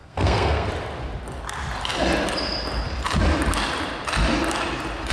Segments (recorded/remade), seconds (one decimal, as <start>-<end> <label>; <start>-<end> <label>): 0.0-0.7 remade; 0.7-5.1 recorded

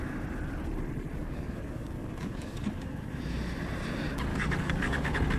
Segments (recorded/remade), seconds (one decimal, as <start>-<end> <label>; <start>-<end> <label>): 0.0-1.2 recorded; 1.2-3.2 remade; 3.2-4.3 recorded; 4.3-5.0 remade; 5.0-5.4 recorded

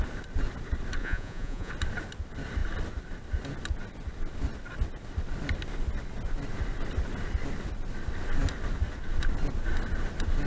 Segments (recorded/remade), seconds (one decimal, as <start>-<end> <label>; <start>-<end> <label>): 0.0-1.0 recorded; 1.0-1.7 remade; 1.7-10.5 recorded

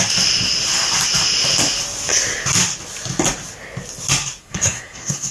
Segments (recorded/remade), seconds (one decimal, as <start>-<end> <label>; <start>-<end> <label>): 0.0-4.4 recorded; 4.4-5.3 remade

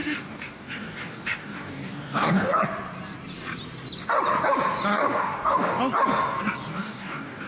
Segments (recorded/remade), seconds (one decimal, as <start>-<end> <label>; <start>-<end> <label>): 0.0-2.6 remade; 2.6-4.9 recorded; 4.9-5.8 remade; 5.8-6.7 recorded; 6.7-7.5 remade